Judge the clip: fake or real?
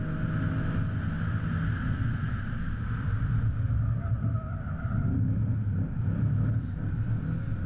real